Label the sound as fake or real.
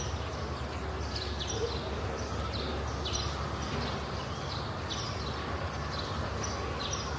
real